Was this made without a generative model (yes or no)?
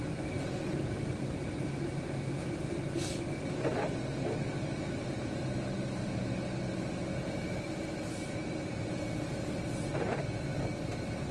yes